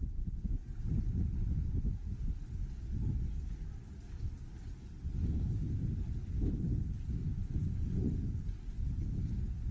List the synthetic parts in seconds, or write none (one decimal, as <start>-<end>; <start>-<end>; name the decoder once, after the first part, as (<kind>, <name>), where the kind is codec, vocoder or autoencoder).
7.2-8.1 (vocoder, Vocos)